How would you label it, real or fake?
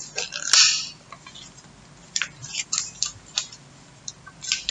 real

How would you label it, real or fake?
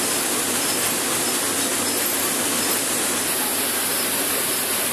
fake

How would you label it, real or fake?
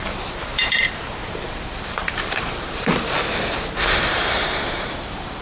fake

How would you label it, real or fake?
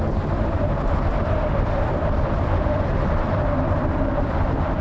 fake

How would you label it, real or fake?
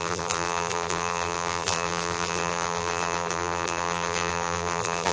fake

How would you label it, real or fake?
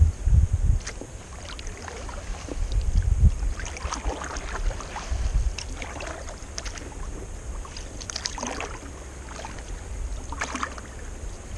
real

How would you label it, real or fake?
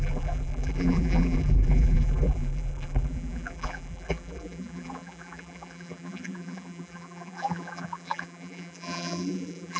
fake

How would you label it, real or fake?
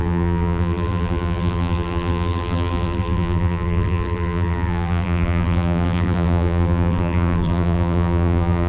fake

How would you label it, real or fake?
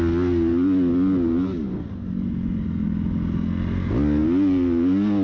real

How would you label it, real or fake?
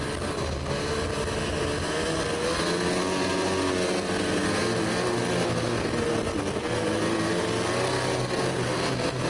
real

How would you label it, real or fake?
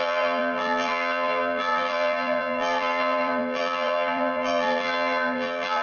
fake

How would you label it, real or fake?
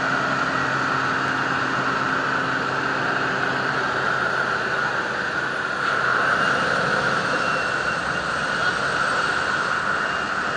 real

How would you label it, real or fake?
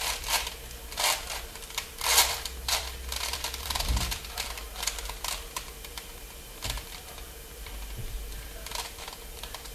fake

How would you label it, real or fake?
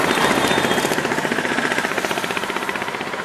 fake